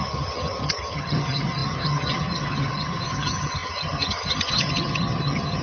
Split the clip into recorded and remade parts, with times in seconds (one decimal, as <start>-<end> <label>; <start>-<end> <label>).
0.0-5.6 remade

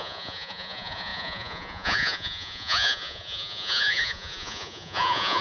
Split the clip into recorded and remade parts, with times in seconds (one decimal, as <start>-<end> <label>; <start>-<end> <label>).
0.0-5.4 remade

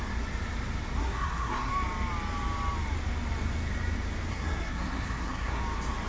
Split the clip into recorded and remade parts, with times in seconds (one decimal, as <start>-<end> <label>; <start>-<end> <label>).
0.0-1.0 recorded; 1.0-1.7 remade; 1.7-4.3 recorded; 4.3-5.6 remade; 5.6-6.1 recorded

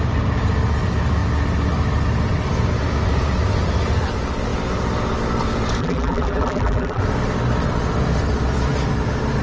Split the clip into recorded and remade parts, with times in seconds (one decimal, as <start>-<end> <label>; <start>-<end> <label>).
0.0-5.8 recorded; 5.8-7.0 remade; 7.0-9.4 recorded